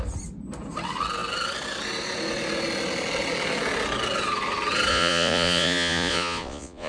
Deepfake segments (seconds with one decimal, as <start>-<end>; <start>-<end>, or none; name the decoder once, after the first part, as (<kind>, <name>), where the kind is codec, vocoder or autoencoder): 4.9-6.9 (vocoder, Vocos)